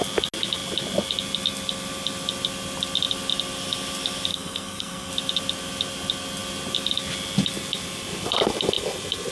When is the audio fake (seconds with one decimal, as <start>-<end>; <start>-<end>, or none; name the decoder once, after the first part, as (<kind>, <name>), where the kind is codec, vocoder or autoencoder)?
4.3-5.1 (codec, SNAC)